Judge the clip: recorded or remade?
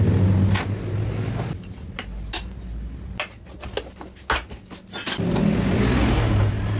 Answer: recorded